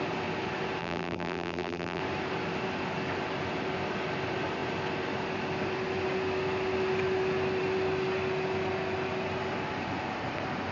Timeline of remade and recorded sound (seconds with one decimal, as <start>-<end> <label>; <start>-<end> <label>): 0.0-0.8 recorded; 0.8-2.0 remade; 2.0-10.7 recorded

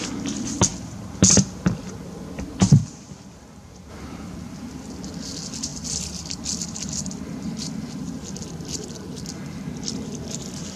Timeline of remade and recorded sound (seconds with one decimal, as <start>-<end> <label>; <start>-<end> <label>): 0.0-0.7 recorded; 0.7-1.2 remade; 1.2-2.8 recorded; 2.8-3.9 remade; 3.9-5.7 recorded; 5.7-7.4 remade; 7.4-10.8 recorded

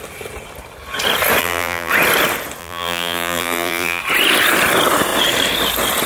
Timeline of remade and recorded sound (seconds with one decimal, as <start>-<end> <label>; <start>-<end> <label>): 0.0-1.4 recorded; 1.4-1.9 remade; 1.9-2.6 recorded; 2.6-4.0 remade; 4.0-6.1 recorded

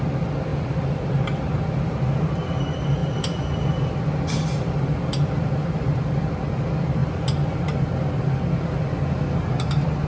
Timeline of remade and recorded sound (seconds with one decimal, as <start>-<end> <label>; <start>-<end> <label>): 0.0-0.5 recorded; 0.5-2.3 remade; 2.3-3.0 recorded; 3.0-6.3 remade; 6.3-7.0 recorded; 7.0-7.9 remade; 7.9-10.1 recorded

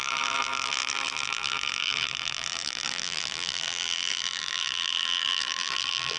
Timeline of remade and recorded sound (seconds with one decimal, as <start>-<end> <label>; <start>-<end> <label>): 0.0-6.2 remade

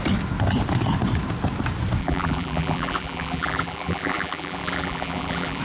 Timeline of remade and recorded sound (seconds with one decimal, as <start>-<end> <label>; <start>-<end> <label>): 0.0-2.0 recorded; 2.0-5.6 remade

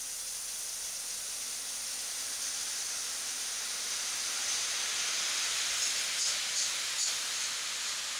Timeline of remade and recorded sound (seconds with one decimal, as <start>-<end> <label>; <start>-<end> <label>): 0.0-8.2 recorded